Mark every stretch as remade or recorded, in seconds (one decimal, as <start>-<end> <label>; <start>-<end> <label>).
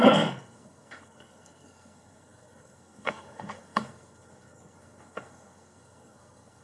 0.0-6.6 remade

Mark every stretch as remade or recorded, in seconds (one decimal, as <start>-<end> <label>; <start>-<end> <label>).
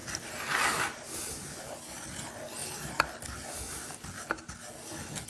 0.0-5.3 recorded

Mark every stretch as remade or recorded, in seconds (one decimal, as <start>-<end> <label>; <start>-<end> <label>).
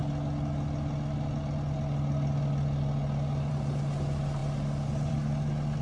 0.0-5.8 recorded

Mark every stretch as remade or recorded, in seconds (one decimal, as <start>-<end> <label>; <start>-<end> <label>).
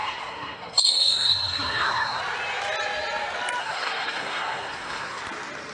0.0-2.2 remade; 2.2-3.6 recorded; 3.6-5.2 remade; 5.2-5.7 recorded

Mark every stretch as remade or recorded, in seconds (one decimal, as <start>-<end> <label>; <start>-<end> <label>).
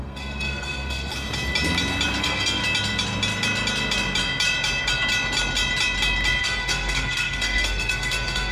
0.0-1.1 remade; 1.1-2.2 recorded; 2.2-2.6 remade; 2.6-6.4 recorded; 6.4-8.5 remade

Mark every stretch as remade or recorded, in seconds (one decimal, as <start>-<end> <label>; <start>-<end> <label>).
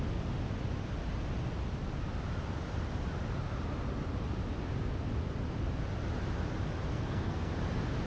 0.0-6.9 recorded; 6.9-7.5 remade; 7.5-8.1 recorded